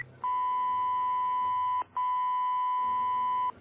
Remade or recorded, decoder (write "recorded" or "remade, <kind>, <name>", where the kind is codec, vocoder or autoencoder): recorded